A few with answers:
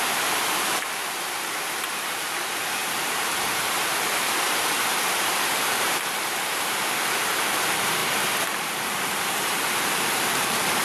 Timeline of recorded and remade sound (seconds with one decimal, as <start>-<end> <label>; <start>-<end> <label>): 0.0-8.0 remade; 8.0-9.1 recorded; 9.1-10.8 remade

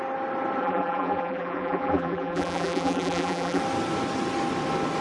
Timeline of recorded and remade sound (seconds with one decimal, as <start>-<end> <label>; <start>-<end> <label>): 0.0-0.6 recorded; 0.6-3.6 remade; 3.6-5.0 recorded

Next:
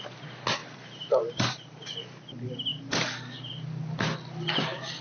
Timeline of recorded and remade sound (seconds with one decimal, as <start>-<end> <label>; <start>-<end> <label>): 0.0-0.6 recorded; 0.6-1.8 remade; 1.8-5.0 recorded